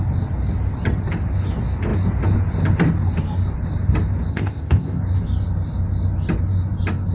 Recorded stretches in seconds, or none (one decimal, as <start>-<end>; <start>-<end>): 0.0-4.3; 5.0-7.1